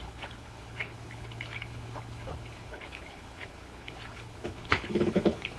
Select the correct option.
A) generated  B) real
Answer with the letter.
A